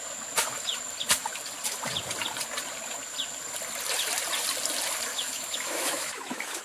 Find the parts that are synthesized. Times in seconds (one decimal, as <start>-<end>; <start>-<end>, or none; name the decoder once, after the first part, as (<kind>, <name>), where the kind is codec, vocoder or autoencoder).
5.1-6.6 (autoencoder, DAC-VAE)